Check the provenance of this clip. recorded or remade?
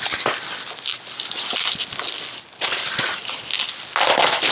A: recorded